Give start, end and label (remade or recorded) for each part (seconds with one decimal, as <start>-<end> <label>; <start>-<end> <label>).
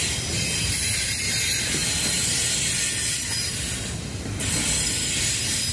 0.0-5.7 recorded